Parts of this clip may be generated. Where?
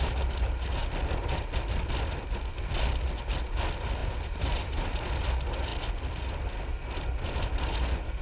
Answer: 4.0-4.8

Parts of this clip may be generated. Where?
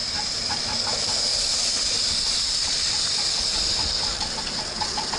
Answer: 0.0-0.6; 1.3-4.4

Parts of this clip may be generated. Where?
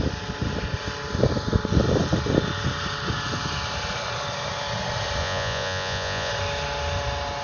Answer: 5.2-6.3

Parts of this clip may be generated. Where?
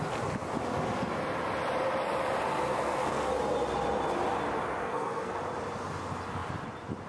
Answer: 2.7-3.3; 4.8-5.4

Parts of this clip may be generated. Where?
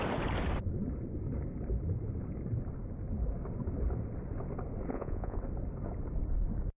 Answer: 4.9-5.4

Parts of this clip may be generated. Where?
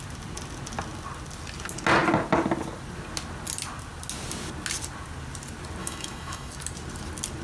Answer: 5.8-6.5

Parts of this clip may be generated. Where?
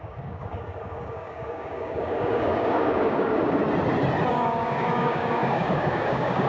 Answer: 0.0-3.6; 4.3-6.5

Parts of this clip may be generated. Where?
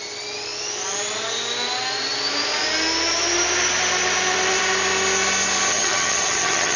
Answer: 5.7-6.8